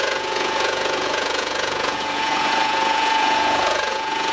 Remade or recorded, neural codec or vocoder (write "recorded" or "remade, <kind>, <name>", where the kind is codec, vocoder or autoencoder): remade, vocoder, Vocos